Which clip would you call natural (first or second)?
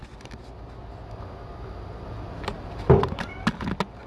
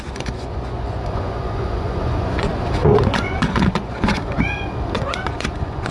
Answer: first